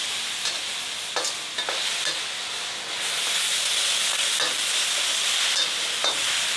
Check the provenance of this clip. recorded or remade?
recorded